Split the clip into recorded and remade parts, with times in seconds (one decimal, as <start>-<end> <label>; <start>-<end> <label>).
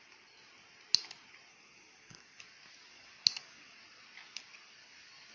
0.0-1.5 recorded; 1.5-2.4 remade; 2.4-2.9 recorded; 2.9-3.8 remade; 3.8-5.3 recorded